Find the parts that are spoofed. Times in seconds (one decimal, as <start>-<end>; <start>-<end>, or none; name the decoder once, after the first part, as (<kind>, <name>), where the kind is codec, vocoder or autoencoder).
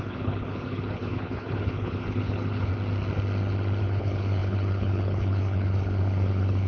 0.0-2.7 (codec, HILCodec); 3.8-6.7